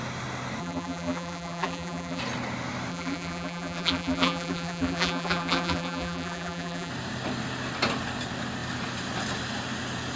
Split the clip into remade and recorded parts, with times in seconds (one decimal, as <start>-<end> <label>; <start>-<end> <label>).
0.0-0.6 recorded; 0.6-2.2 remade; 2.2-2.9 recorded; 2.9-6.9 remade; 6.9-10.2 recorded